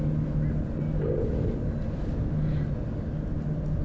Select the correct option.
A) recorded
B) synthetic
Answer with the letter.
A